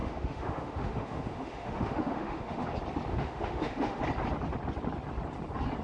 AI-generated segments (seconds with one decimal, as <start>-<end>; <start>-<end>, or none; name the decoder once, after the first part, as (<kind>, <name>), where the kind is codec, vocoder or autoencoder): 0.0-2.7 (autoencoder, DAC-VAE); 3.1-4.0